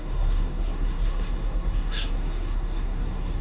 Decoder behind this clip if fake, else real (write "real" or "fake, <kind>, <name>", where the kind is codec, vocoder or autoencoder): fake, codec, SNAC